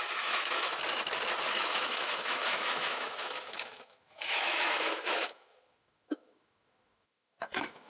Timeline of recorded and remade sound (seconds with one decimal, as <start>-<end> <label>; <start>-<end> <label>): 0.0-0.7 remade; 0.7-1.5 recorded; 1.5-7.9 remade